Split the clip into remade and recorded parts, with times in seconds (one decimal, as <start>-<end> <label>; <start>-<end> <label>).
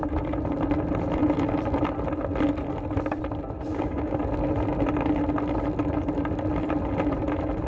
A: 0.0-3.7 recorded; 3.7-4.2 remade; 4.2-7.7 recorded